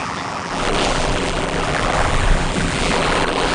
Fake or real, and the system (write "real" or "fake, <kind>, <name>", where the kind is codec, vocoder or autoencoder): fake, vocoder, BigVGAN v2